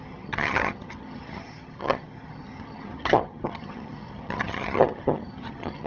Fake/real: fake